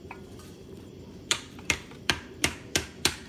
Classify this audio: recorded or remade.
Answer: remade